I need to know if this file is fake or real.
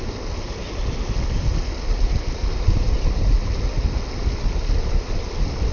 real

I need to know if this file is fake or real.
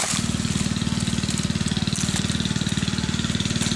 real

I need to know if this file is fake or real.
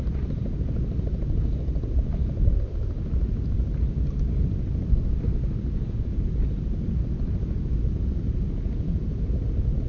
real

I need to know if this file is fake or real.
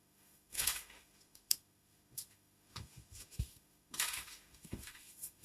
fake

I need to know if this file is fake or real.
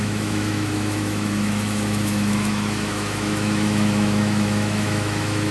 fake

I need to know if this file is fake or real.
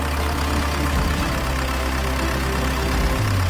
real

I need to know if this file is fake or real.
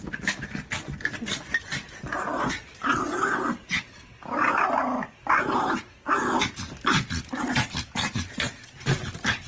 real